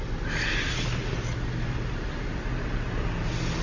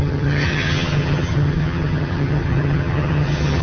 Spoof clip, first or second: second